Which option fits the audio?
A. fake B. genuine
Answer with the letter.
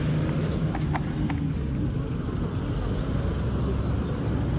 B